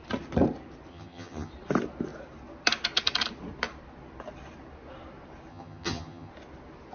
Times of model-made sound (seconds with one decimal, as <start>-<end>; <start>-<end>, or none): 0.9-1.5; 5.5-6.3